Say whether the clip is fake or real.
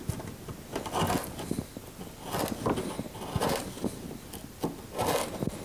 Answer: real